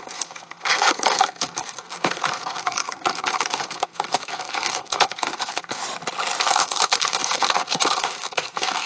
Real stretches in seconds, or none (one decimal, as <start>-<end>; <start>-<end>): 5.8-6.4